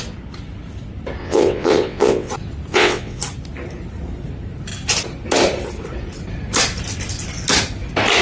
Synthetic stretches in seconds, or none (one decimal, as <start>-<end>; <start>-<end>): 1.2-2.3; 2.7-3.2